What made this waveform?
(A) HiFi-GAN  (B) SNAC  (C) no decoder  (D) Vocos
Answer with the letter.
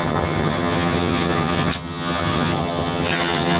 A